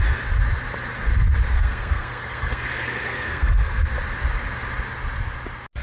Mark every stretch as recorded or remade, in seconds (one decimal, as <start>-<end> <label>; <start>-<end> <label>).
0.0-1.5 recorded; 1.5-3.9 remade; 3.9-5.8 recorded